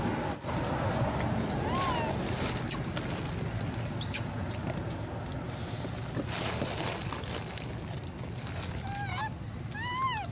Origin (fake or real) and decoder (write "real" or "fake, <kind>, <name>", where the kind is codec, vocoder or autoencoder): real